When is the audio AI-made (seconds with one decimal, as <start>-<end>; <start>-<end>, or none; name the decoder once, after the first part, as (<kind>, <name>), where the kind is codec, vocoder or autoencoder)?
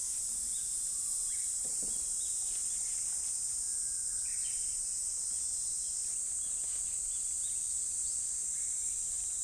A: 0.0-2.6 (vocoder, BigVGAN v2); 7.5-8.0; 8.9-9.4